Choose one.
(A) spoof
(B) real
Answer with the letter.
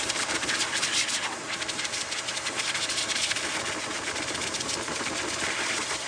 A